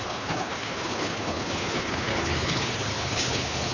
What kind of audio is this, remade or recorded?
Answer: remade